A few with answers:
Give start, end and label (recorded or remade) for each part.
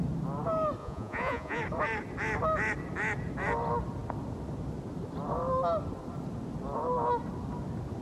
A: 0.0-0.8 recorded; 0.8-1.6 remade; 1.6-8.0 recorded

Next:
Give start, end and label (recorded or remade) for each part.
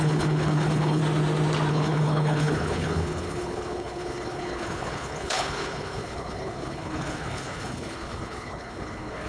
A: 0.0-1.0 remade; 1.0-1.7 recorded; 1.7-9.3 remade